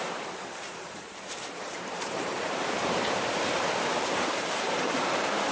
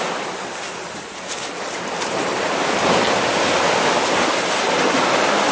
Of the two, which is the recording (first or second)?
second